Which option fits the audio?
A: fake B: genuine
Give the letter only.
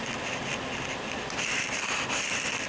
B